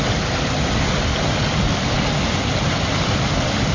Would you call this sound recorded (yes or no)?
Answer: yes